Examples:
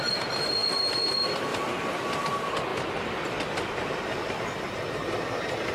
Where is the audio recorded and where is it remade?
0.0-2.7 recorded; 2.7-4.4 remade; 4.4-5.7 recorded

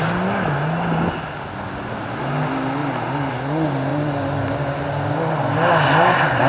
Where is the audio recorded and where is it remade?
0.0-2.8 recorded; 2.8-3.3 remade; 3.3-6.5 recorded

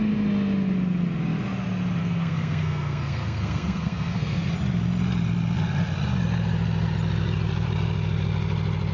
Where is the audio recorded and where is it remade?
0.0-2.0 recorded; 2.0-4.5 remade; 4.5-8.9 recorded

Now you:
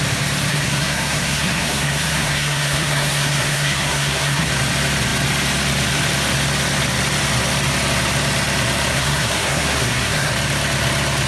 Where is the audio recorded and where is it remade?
0.0-0.5 recorded; 0.5-4.5 remade; 4.5-8.9 recorded; 8.9-10.3 remade; 10.3-11.3 recorded

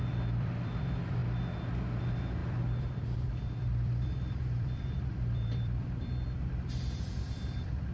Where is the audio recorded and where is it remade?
0.0-1.2 remade; 1.2-2.0 recorded; 2.0-7.9 remade

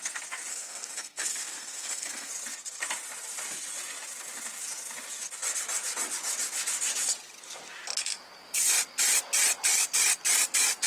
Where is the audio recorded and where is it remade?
0.0-0.5 recorded; 0.5-2.3 remade; 2.3-10.9 recorded